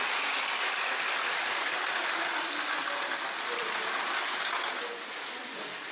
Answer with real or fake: real